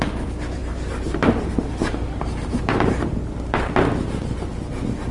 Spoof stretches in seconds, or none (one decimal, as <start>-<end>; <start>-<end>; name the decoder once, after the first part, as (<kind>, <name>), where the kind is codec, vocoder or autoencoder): 0.6-3.7 (vocoder, BigVGAN v2)